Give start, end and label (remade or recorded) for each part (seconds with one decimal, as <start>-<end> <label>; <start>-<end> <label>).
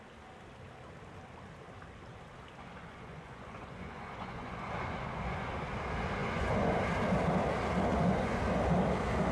0.0-2.6 recorded; 2.6-5.5 remade; 5.5-6.2 recorded; 6.2-6.8 remade; 6.8-7.9 recorded; 7.9-8.4 remade; 8.4-9.3 recorded